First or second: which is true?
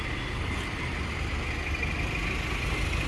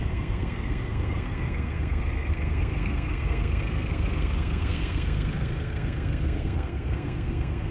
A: first